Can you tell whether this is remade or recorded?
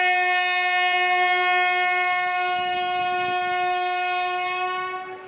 recorded